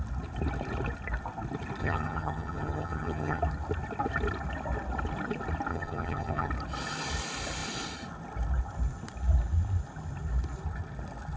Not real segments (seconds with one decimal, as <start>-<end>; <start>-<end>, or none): 1.8-3.4; 5.7-6.5